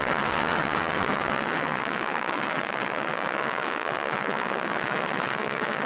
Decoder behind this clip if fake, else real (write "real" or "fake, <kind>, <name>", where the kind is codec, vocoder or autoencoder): fake, vocoder, WaveNeXt